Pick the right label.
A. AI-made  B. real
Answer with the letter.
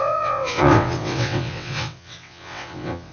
A